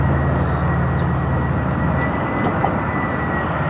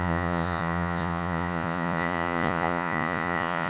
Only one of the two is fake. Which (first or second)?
second